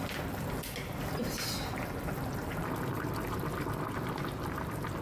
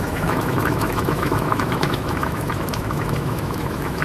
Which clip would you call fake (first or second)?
second